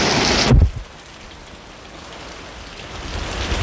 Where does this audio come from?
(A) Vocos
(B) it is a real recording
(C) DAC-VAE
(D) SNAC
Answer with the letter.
B